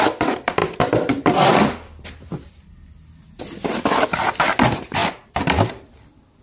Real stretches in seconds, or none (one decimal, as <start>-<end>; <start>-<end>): 0.0-0.6; 2.7-5.0